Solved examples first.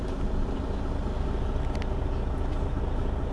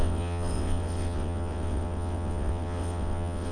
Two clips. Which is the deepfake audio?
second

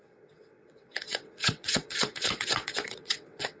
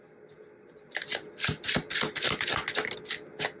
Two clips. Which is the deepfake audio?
first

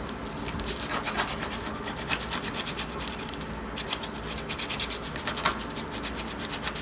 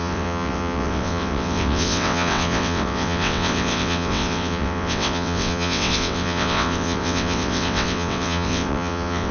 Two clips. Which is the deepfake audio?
second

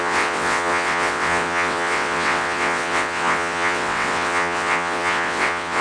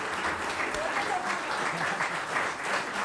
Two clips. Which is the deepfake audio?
first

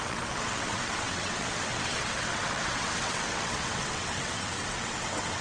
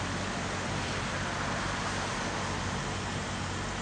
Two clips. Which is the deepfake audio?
first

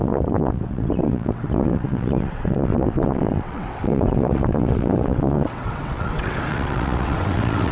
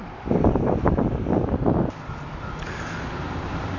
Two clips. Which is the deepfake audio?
first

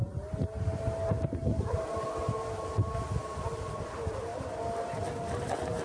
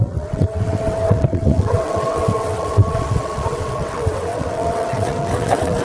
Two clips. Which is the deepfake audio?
second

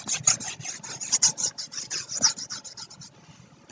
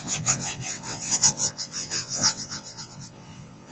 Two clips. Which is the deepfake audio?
second